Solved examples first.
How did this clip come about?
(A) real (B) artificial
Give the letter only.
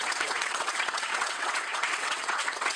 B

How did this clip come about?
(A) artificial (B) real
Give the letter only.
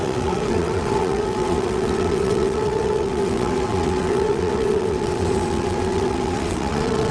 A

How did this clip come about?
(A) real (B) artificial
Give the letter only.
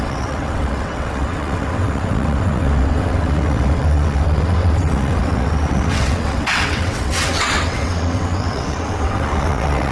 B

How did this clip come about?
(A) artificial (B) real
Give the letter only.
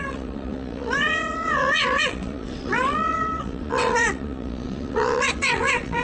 A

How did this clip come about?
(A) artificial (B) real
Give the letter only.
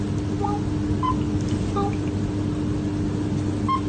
B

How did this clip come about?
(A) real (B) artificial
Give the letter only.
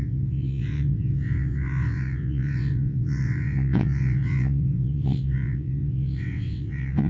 B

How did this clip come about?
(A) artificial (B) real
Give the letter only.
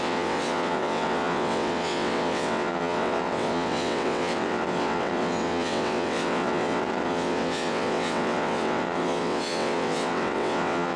A